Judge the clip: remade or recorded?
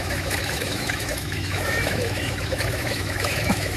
remade